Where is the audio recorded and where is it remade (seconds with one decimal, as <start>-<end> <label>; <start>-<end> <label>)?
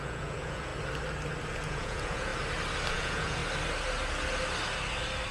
0.0-0.7 remade; 0.7-1.5 recorded; 1.5-2.3 remade; 2.3-2.9 recorded; 2.9-3.4 remade; 3.4-5.3 recorded